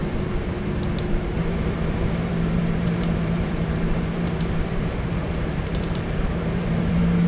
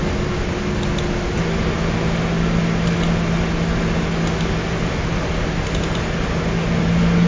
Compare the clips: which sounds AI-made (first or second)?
first